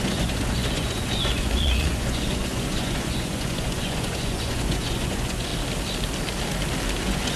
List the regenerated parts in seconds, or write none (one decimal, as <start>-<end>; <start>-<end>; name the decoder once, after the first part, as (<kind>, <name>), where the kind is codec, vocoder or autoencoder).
0.0-5.5 (vocoder, Vocos); 7.0-7.4